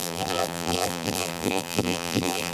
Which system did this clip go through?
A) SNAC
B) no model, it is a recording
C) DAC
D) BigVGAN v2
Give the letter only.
D